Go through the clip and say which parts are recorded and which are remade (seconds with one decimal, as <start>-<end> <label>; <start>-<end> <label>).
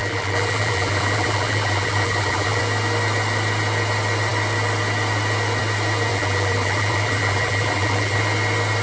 0.0-2.6 remade; 2.6-6.1 recorded; 6.1-8.2 remade; 8.2-8.8 recorded